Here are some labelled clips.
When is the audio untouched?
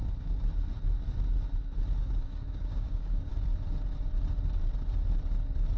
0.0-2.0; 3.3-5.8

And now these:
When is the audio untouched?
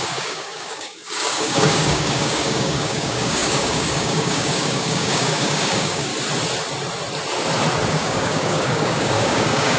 6.1-7.9